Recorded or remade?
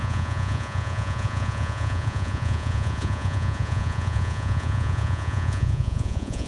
remade